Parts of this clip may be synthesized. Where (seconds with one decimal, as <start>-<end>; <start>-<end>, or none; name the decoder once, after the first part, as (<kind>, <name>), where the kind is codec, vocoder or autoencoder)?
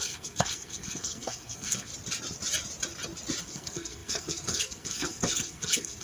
0.0-1.9 (codec, SNAC); 3.4-6.0